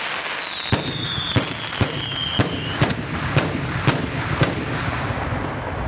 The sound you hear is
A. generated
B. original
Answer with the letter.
B